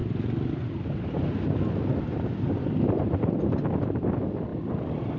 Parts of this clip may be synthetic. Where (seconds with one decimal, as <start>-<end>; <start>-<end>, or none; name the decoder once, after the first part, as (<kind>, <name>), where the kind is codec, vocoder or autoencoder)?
2.0-4.5 (vocoder, BigVGAN v2)